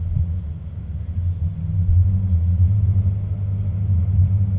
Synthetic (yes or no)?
no